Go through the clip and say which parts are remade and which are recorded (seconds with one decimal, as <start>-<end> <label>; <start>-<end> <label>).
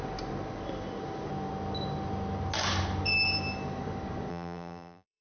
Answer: 0.0-4.3 recorded; 4.3-5.2 remade